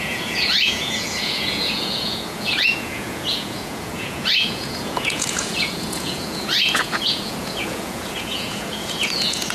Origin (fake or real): fake